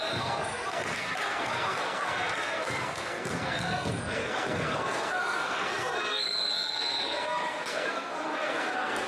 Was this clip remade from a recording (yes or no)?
yes